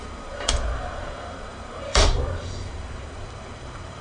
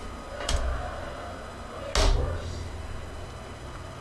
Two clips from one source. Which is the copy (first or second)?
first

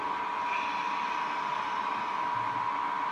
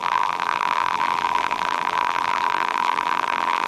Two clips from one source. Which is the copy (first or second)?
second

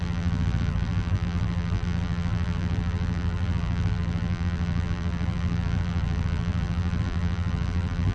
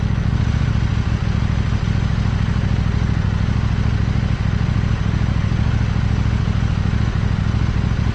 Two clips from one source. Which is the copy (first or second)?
first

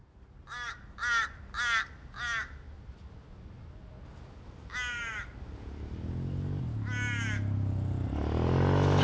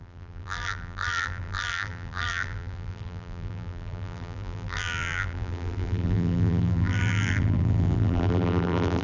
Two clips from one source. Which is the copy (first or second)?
second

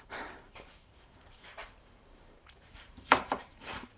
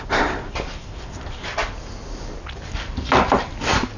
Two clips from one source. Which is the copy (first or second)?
first